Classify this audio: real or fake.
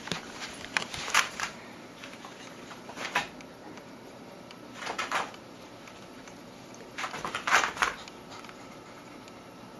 fake